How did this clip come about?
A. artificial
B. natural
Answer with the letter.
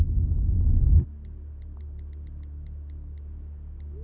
B